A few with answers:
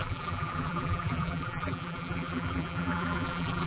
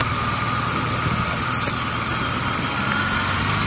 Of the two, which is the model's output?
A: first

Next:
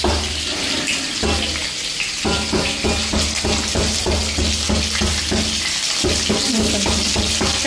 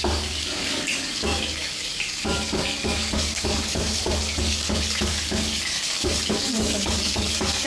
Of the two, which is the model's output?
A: second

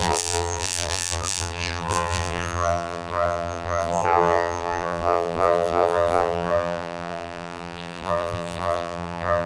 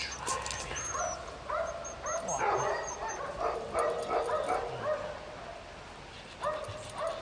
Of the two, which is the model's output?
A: first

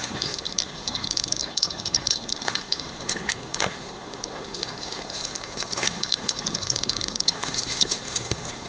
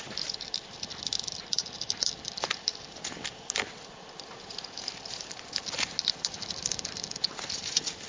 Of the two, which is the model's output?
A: first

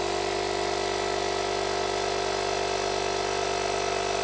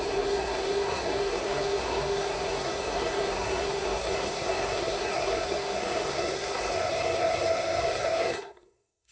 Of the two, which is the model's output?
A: second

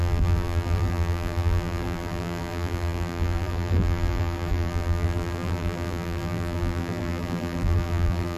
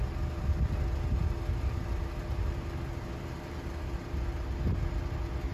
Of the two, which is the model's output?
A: first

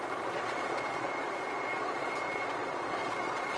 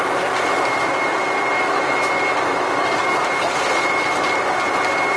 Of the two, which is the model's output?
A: first